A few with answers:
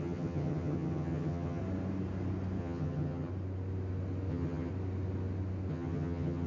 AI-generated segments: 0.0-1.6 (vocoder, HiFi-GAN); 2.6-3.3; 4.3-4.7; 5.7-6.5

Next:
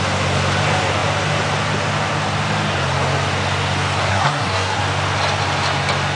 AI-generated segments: 4.1-4.8 (codec, SNAC)